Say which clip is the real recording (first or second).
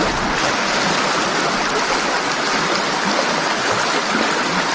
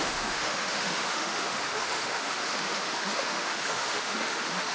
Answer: first